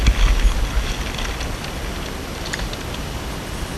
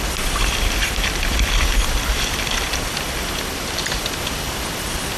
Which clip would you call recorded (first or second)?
first